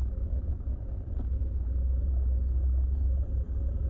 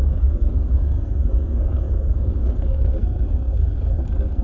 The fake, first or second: second